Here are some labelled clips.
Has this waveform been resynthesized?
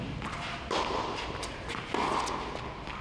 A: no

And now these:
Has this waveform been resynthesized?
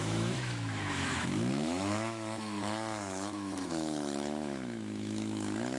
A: yes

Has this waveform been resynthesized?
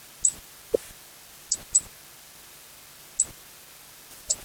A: no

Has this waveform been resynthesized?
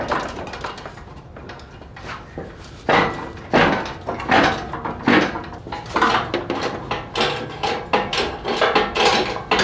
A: no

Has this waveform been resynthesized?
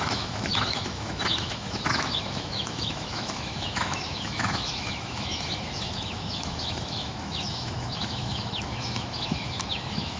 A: yes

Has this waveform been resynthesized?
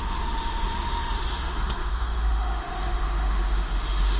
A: yes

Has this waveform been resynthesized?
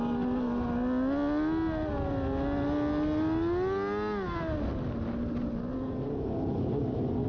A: no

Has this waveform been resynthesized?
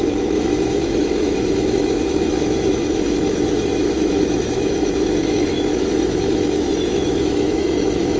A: yes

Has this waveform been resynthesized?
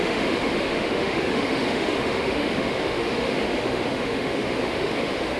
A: yes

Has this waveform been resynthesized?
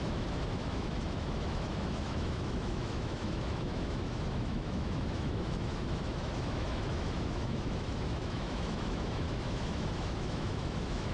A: yes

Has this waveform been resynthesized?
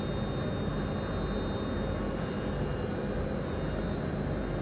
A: no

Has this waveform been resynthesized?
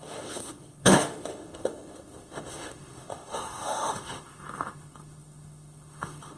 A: yes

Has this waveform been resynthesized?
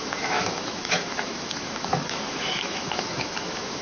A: yes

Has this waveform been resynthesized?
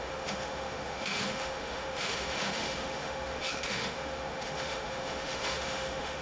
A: yes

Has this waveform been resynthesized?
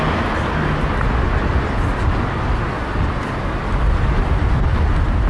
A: no